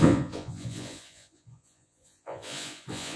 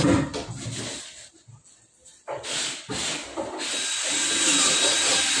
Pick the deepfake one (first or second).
first